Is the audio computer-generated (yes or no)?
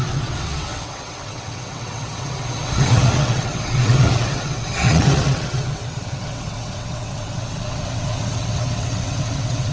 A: yes